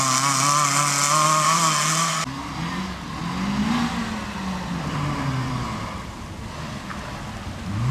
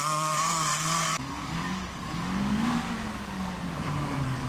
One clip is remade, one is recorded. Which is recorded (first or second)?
first